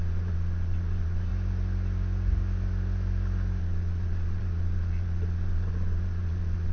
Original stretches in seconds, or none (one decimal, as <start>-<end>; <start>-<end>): 1.3-3.6